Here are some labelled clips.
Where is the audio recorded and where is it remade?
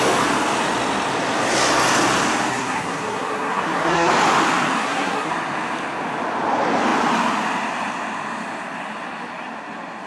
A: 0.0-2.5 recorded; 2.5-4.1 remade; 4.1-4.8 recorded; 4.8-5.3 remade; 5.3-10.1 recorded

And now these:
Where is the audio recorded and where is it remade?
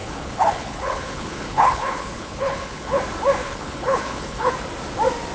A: 0.0-3.0 remade; 3.0-3.4 recorded; 3.4-4.5 remade; 4.5-5.3 recorded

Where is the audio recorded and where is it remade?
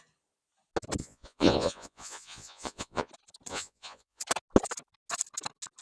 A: 0.0-1.0 recorded; 1.0-3.1 remade; 3.1-3.5 recorded; 3.5-4.2 remade; 4.2-5.8 recorded